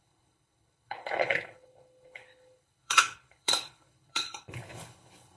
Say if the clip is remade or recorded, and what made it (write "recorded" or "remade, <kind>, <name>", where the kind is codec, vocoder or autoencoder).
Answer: remade, codec, HILCodec